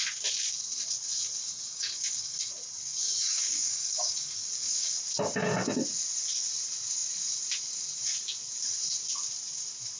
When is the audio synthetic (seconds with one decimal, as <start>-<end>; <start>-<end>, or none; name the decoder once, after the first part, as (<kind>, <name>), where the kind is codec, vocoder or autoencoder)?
1.4-2.5 (codec, DAC); 2.9-5.0